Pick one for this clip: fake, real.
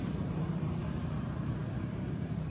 fake